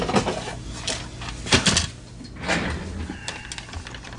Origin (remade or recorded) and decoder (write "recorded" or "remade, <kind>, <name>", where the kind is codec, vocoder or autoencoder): recorded